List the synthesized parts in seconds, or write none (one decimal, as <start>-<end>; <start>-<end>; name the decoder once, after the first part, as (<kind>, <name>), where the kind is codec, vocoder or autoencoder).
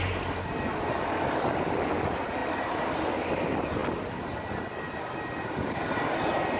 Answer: none